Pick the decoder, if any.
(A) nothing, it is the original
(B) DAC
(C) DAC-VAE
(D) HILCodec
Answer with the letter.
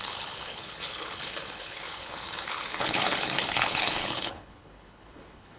D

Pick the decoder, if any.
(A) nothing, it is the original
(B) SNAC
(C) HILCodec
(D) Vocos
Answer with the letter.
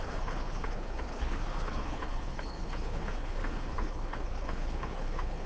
C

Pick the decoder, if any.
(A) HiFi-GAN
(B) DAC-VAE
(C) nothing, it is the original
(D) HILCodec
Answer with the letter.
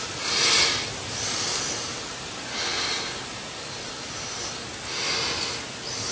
C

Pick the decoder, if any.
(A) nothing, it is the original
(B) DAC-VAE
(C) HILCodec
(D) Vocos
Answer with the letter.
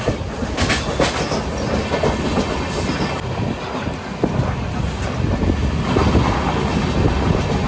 A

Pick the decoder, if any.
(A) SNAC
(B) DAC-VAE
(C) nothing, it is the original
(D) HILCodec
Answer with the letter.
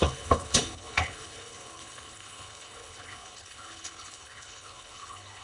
D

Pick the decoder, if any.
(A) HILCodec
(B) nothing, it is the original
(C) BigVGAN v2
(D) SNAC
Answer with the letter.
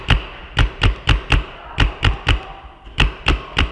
B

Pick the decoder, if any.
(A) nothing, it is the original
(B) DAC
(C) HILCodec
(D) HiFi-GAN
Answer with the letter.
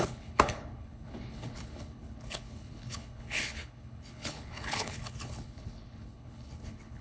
C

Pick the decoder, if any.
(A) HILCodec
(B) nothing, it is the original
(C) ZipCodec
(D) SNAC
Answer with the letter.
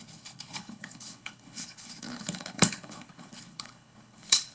A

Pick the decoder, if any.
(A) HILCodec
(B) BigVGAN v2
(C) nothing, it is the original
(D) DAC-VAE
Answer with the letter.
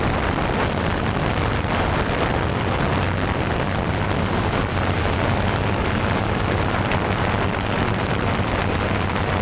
C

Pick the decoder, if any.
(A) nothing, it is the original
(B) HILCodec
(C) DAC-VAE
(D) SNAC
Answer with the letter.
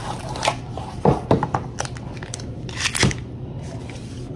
A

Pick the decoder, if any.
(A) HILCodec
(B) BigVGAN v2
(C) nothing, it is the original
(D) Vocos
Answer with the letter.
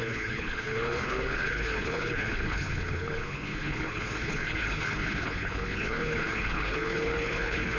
A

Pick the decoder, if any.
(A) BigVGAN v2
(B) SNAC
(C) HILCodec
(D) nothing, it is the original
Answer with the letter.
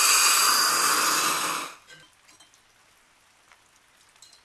D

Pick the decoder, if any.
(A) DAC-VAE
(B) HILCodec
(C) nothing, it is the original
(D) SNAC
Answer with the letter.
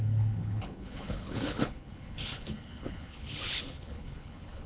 B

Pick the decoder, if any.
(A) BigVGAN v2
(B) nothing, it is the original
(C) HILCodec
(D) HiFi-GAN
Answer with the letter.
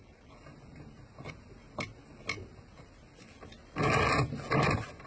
B